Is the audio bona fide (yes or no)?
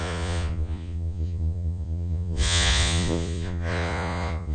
no